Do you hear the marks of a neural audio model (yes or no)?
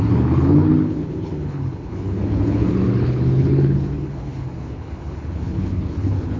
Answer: yes